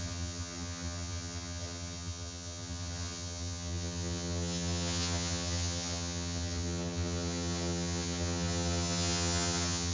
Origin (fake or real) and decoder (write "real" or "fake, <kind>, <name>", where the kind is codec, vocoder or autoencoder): fake, vocoder, HiFi-GAN